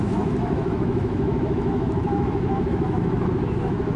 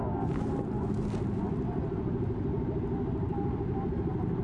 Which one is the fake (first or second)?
first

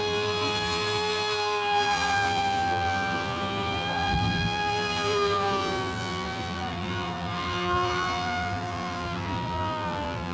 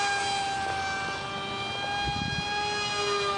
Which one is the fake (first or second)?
first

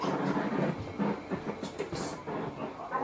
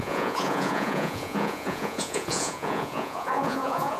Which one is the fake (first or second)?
second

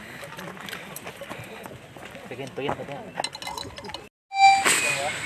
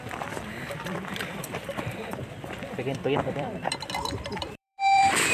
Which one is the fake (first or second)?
second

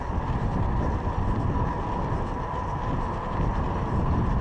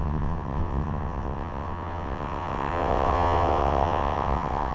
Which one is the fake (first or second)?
second